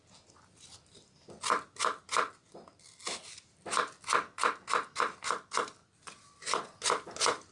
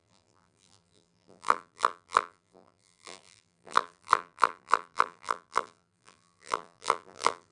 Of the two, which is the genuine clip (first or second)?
first